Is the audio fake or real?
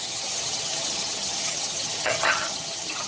fake